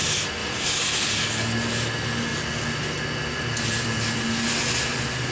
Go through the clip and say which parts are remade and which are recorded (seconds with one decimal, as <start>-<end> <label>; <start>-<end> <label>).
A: 0.0-0.4 recorded; 0.4-1.2 remade; 1.2-5.3 recorded